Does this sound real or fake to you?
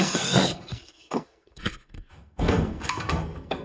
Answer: fake